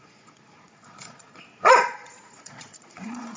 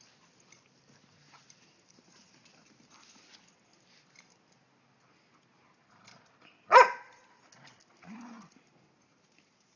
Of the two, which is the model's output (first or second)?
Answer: first